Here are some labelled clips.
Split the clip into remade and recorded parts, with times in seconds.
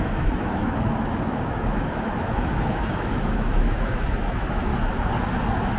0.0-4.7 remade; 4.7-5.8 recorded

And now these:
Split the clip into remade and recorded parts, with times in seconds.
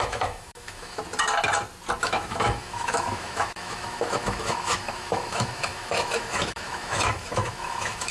0.0-1.0 remade; 1.0-2.0 recorded; 2.0-8.1 remade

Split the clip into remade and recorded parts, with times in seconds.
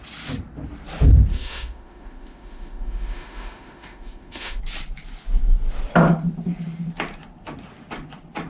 0.0-1.3 recorded; 1.3-4.6 remade; 4.6-8.5 recorded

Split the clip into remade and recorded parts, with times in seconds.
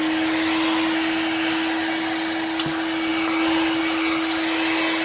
0.0-5.0 recorded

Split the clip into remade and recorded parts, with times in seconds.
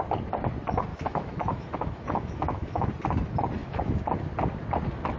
0.0-0.9 recorded; 0.9-2.9 remade; 2.9-3.6 recorded; 3.6-4.2 remade; 4.2-5.2 recorded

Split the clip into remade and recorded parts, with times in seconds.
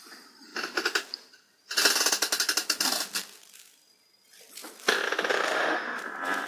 0.0-5.3 recorded; 5.3-6.0 remade; 6.0-6.5 recorded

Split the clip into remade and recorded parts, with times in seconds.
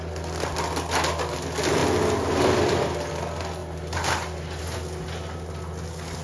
0.0-6.2 recorded